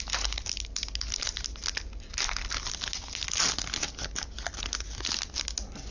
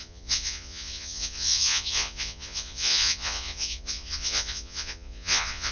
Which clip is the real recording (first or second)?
first